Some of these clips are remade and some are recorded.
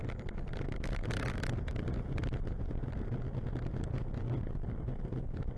recorded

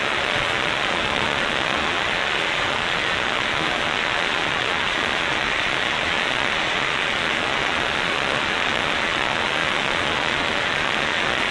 remade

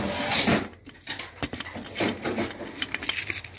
recorded